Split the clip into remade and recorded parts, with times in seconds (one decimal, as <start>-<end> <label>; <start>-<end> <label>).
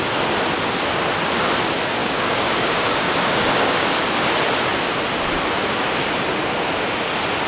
0.0-2.0 recorded; 2.0-4.1 remade; 4.1-7.5 recorded